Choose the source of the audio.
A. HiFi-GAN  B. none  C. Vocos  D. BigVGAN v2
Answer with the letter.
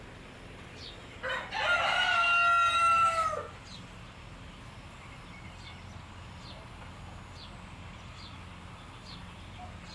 B